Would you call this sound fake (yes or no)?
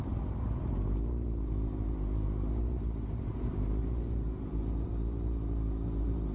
yes